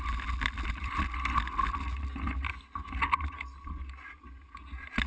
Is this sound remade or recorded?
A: recorded